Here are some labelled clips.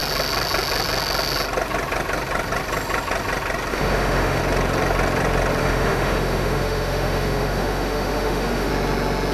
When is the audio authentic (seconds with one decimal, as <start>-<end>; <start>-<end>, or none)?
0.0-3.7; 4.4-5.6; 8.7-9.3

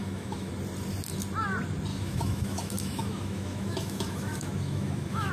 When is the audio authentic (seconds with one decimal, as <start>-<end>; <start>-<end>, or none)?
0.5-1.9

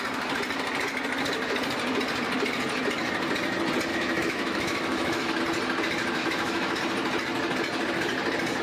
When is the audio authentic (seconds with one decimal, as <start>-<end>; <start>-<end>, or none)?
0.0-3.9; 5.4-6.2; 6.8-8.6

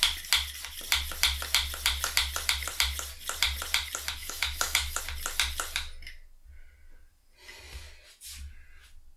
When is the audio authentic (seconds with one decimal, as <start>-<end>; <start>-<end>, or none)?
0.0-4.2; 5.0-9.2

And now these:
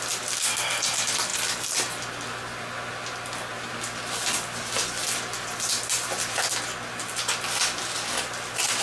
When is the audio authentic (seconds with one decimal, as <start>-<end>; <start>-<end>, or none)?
0.0-8.8

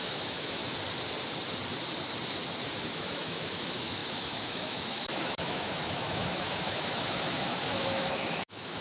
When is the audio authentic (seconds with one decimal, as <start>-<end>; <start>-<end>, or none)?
0.6-2.9

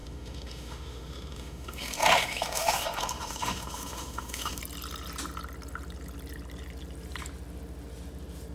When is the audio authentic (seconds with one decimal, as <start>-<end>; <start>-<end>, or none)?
4.6-8.5